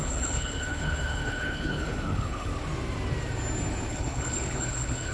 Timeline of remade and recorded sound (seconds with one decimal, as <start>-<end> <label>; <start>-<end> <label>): 0.0-2.5 remade; 2.5-3.9 recorded; 3.9-5.1 remade